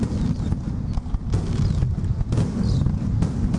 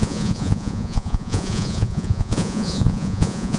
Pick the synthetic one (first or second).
second